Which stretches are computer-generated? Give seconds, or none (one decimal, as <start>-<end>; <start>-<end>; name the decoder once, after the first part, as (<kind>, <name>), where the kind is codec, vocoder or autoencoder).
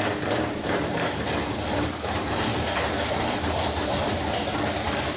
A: 0.0-2.5 (vocoder, BigVGAN v2); 3.1-5.2